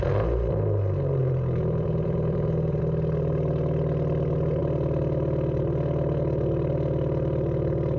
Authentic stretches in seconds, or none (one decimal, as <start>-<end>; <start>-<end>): 0.0-1.2; 2.8-8.0